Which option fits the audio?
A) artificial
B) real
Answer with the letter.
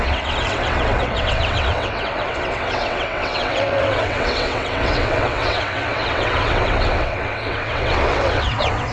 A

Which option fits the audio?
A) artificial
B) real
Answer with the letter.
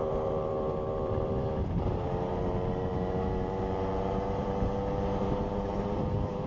A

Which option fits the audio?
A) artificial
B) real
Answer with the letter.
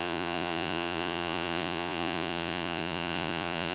A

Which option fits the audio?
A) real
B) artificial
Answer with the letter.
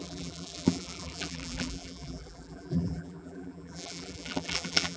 B